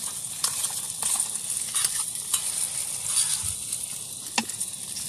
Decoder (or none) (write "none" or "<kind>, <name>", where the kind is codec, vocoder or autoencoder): none